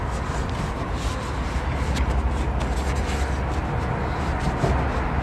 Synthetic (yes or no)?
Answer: no